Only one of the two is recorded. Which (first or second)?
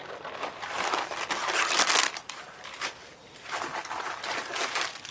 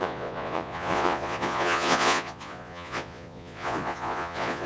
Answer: first